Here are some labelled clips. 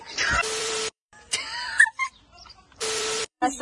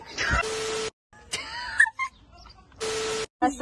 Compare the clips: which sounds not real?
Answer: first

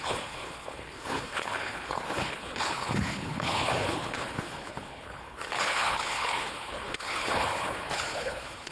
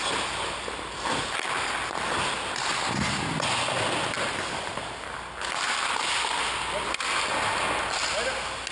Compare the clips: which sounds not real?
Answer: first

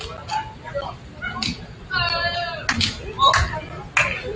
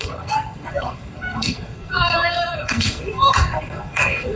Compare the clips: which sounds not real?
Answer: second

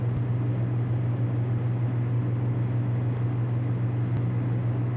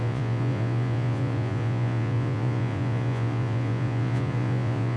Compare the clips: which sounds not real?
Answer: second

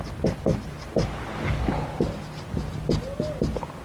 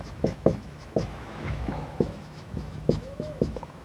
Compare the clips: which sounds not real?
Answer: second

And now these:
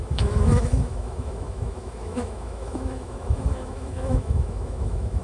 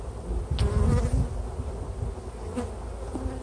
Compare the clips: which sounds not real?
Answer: first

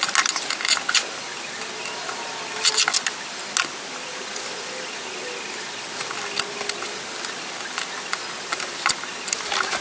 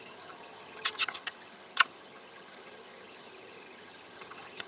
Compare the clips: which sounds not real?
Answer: second